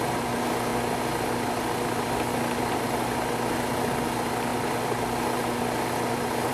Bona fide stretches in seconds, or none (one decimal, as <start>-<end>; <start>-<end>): 0.0-6.5